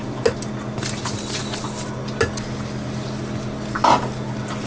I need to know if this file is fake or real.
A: real